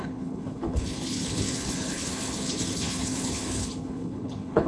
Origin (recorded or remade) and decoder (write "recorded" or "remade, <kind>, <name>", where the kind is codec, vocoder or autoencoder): remade, codec, HILCodec